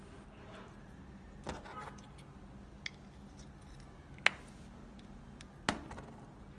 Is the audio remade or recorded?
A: recorded